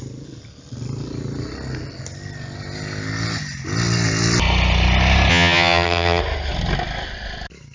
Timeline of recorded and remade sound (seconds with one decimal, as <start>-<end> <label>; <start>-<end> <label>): 0.0-5.3 recorded; 5.3-6.2 remade; 6.2-7.7 recorded